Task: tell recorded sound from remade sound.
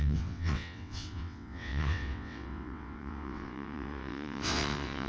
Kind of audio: remade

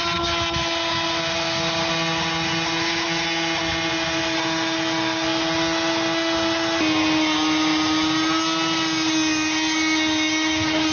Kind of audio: recorded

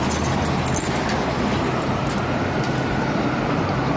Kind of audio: recorded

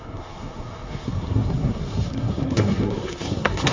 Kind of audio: remade